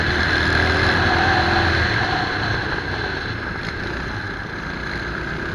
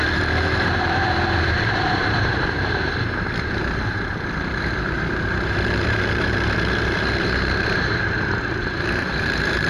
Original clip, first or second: first